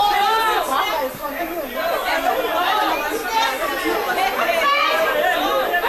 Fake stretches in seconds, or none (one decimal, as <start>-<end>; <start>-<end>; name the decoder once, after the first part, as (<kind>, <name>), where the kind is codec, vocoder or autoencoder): none

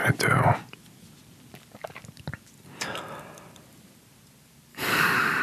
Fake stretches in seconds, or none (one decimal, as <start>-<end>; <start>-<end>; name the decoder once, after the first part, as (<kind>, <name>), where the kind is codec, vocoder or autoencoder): 4.7-5.4 (codec, DAC)

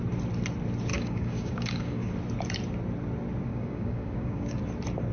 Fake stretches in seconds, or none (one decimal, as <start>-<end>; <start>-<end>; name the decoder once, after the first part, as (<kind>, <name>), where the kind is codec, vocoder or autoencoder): 0.9-2.1 (codec, DAC); 3.5-4.6

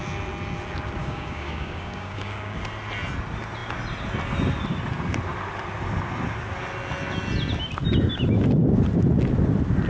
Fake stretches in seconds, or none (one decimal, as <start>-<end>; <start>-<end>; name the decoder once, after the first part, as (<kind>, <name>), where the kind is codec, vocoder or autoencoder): 1.0-2.6 (codec, DAC)